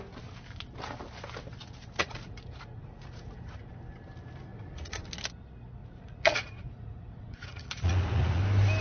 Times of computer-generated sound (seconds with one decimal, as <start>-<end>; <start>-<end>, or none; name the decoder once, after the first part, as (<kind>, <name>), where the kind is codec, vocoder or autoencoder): 2.0-3.7 (vocoder, Vocos); 4.5-5.0; 5.8-8.4